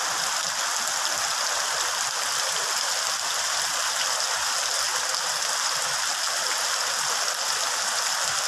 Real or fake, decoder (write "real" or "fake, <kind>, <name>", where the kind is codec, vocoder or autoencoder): real